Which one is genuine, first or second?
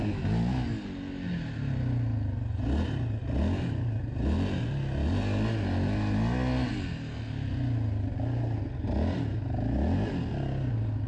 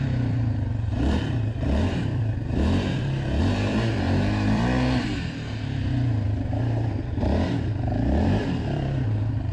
first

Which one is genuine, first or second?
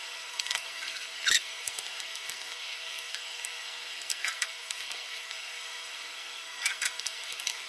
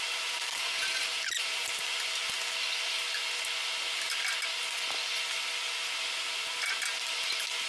second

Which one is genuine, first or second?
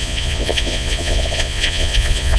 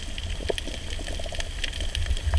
second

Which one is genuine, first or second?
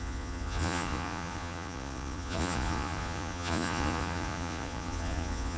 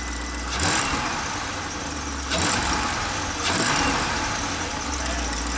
second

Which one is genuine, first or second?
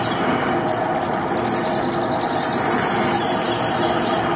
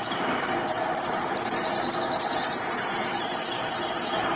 first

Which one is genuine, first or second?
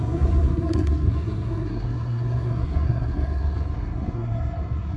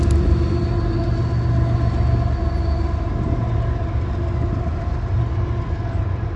second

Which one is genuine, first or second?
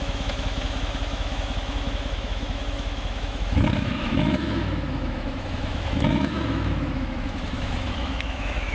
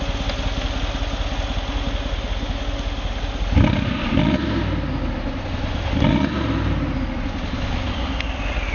second